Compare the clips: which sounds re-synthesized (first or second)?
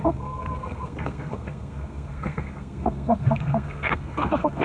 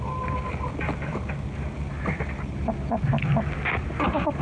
first